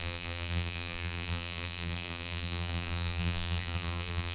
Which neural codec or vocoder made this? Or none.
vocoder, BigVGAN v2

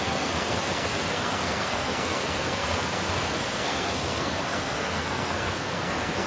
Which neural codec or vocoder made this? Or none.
codec, SNAC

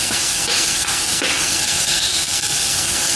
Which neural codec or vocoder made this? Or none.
codec, SNAC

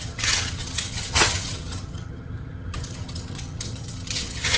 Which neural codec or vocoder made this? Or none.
vocoder, HiFi-GAN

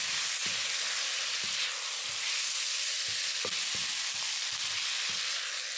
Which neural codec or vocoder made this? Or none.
none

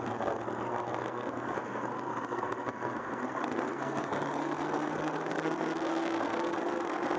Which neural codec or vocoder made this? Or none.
codec, SNAC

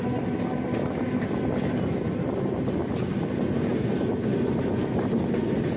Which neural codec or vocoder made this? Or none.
none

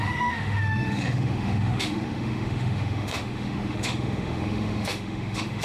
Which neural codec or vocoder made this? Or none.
autoencoder, DAC-VAE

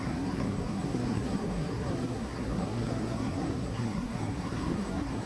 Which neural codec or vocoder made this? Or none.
codec, SNAC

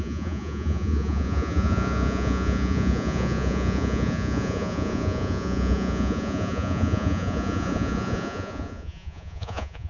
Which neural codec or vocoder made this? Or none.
vocoder, Vocos